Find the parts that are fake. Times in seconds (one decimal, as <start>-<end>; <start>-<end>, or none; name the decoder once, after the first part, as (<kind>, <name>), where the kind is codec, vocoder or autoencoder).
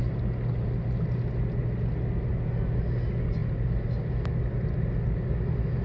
none